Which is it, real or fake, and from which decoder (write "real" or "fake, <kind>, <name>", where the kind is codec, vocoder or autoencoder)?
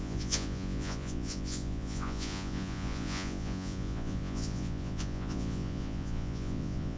fake, vocoder, Vocos